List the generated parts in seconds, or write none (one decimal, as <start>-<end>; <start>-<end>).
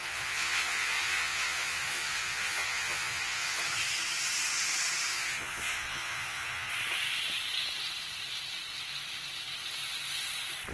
0.0-3.6; 5.1-6.7